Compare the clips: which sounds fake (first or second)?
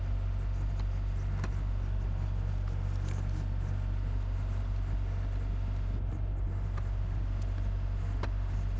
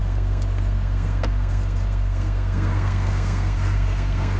second